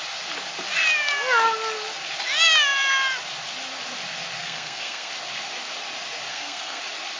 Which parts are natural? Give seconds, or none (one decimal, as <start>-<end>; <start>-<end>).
0.0-4.4; 5.1-6.3; 6.8-7.2